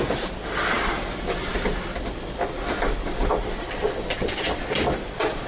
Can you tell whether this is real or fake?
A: real